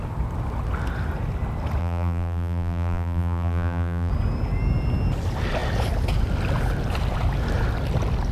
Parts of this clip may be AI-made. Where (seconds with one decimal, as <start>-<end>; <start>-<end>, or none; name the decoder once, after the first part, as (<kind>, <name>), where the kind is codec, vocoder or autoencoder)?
1.8-4.1 (vocoder, BigVGAN v2)

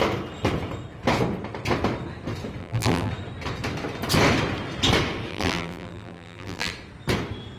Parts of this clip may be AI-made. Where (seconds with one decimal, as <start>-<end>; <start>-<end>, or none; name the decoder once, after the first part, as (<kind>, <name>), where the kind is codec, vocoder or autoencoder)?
2.6-3.1 (vocoder, BigVGAN v2); 5.3-6.7

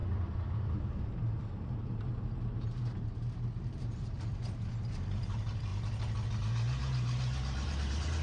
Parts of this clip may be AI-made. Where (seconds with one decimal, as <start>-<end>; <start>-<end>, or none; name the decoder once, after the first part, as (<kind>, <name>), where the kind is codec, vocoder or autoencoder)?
0.0-5.7 (vocoder, BigVGAN v2); 6.4-8.2

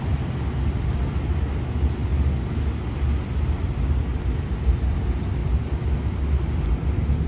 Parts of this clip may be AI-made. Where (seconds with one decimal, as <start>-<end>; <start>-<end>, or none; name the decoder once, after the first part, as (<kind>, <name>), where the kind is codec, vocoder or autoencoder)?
none